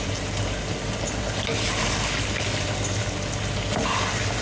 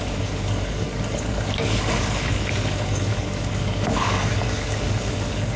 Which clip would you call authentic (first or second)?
first